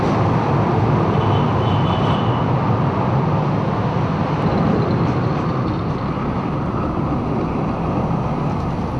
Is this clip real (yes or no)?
yes